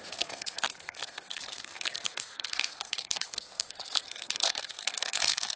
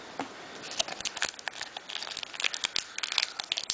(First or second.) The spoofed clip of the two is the first